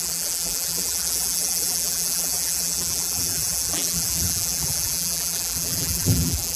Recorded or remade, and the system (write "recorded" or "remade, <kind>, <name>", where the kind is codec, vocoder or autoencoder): remade, vocoder, BigVGAN v2